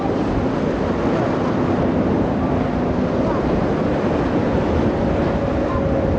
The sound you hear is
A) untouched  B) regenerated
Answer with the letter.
A